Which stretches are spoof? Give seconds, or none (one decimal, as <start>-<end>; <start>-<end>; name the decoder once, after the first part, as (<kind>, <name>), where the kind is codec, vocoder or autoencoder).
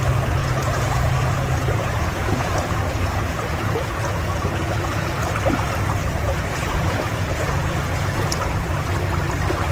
0.4-5.2 (vocoder, Vocos); 6.0-8.6